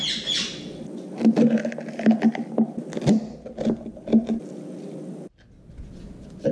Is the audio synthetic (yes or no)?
no